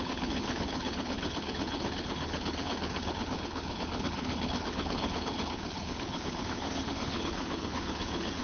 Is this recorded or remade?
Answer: remade